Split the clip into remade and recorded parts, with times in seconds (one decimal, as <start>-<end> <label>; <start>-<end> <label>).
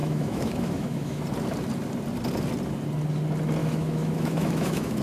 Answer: 0.0-1.2 remade; 1.2-3.6 recorded; 3.6-5.0 remade